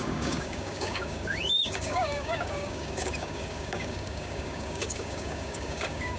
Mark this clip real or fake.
fake